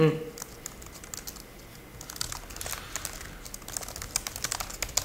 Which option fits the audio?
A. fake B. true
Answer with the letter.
B